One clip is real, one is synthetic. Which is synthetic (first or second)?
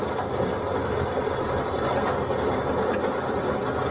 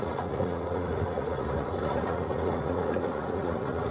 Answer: second